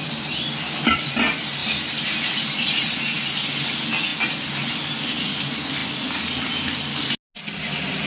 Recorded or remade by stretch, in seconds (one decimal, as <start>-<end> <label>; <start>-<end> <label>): 0.0-8.1 recorded